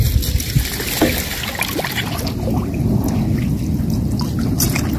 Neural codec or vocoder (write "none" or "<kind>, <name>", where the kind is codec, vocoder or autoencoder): none